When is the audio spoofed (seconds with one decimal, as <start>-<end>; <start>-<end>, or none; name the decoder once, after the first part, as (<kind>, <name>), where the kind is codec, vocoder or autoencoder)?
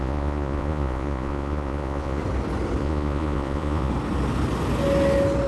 0.0-2.2 (vocoder, Vocos); 2.8-3.9